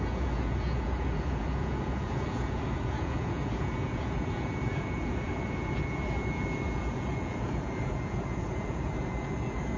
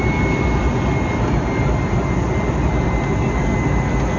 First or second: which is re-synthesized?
first